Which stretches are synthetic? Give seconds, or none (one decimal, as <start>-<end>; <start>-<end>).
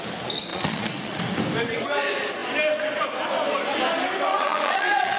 0.5-1.2; 4.3-5.2